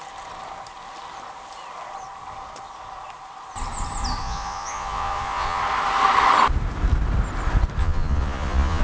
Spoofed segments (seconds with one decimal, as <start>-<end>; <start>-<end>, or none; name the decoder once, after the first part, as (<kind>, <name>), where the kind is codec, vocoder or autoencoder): 4.2-5.6 (vocoder, Vocos); 7.8-8.8